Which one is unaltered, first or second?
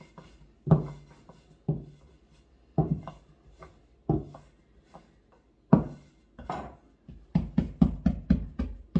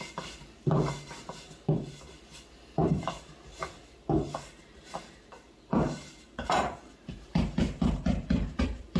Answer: first